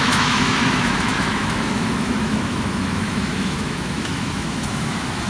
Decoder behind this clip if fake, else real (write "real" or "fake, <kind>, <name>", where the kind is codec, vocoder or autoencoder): fake, autoencoder, DAC-VAE